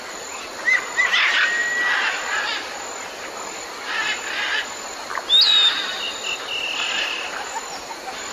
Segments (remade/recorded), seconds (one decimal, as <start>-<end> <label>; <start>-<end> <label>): 0.0-8.3 recorded